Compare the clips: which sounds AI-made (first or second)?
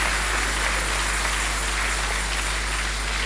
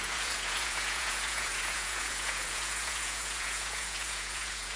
second